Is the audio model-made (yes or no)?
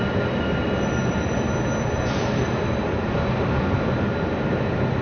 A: no